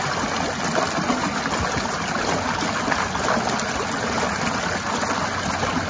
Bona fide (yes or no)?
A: yes